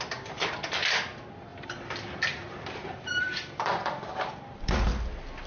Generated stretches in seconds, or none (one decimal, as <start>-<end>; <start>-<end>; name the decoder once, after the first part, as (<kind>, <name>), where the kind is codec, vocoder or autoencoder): 1.5-4.8 (vocoder, BigVGAN v2)